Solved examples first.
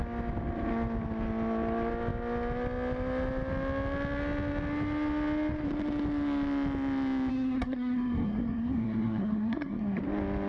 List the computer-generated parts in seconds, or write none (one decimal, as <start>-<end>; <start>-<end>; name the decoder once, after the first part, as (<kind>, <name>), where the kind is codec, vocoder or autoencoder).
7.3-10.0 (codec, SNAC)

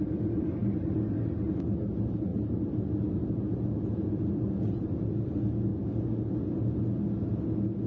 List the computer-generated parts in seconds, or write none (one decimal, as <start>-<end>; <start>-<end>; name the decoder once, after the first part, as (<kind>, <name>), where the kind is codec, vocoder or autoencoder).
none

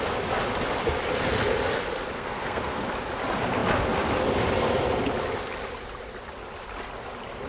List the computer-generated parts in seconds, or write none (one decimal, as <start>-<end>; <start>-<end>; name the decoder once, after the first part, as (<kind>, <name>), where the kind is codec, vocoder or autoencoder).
2.2-2.8 (codec, SNAC)